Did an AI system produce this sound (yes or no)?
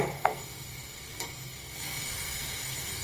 yes